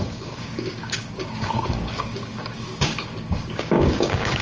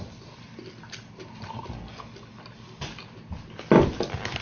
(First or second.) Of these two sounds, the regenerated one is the first